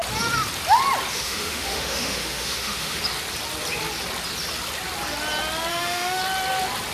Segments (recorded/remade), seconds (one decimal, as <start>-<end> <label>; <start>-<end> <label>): 0.0-1.1 recorded; 1.1-3.0 remade; 3.0-5.7 recorded; 5.7-6.2 remade; 6.2-6.9 recorded